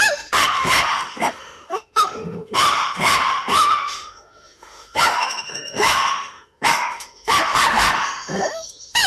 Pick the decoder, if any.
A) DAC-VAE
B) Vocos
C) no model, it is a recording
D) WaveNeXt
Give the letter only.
A